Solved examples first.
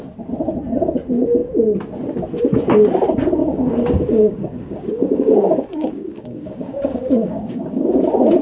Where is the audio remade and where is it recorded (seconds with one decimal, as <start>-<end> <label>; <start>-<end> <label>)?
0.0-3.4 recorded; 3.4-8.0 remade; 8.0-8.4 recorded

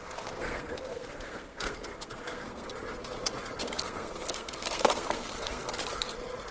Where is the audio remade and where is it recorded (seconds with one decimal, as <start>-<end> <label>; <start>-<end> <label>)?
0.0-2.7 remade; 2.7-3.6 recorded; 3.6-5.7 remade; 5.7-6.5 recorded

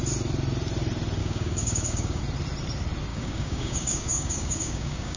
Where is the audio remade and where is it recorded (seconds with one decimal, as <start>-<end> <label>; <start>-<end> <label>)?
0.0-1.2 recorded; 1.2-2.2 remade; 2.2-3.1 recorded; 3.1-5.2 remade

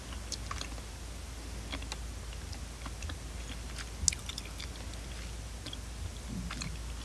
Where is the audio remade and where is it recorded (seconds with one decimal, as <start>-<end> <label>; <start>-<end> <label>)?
0.0-7.0 recorded